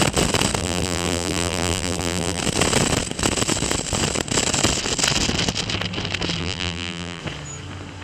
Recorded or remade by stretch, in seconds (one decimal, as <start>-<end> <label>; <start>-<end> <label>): 0.0-0.6 recorded; 0.6-2.4 remade; 2.4-6.4 recorded; 6.4-7.2 remade; 7.2-8.0 recorded